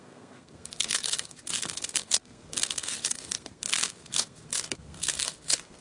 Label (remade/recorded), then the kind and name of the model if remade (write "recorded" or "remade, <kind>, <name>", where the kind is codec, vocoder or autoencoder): remade, codec, SNAC